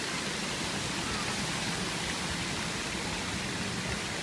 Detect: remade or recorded recorded